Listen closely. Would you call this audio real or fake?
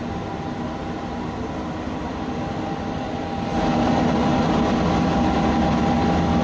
real